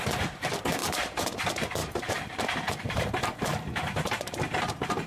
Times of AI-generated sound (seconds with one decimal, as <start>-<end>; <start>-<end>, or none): 0.8-1.4; 1.8-5.1